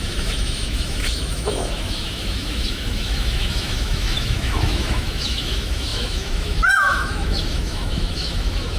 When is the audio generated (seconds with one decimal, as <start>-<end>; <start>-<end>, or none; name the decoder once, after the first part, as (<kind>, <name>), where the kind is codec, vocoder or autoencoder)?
0.0-8.8 (autoencoder, DAC-VAE)

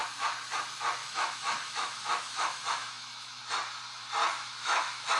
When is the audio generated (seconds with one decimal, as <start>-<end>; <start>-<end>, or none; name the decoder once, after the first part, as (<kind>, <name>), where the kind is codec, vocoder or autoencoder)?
1.0-3.4 (autoencoder, DAC-VAE); 4.2-5.2

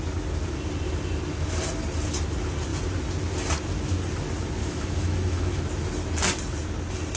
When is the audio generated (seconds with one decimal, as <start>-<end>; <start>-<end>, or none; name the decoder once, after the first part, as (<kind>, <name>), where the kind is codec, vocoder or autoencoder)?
4.6-5.6 (autoencoder, DAC-VAE)